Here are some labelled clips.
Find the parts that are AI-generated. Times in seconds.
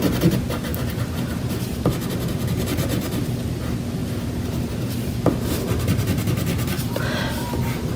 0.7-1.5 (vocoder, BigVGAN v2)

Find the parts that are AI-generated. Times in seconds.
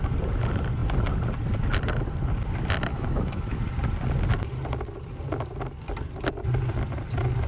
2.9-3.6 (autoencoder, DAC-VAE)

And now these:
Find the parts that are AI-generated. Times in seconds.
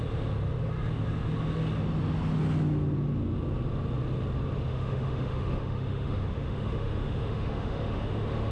4.7-8.5 (autoencoder, DAC-VAE)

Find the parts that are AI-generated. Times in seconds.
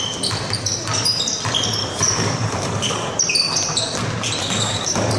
1.8-3.1 (codec, DAC); 4.4-5.2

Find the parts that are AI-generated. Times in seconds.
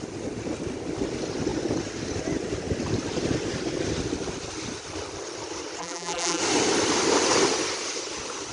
5.8-6.4 (vocoder, BigVGAN v2)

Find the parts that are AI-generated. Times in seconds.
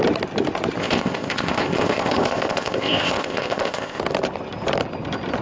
0.8-4.0 (codec, ZipCodec)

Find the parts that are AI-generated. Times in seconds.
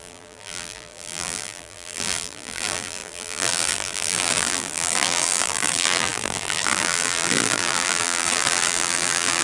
0.0-9.4 (vocoder, BigVGAN v2)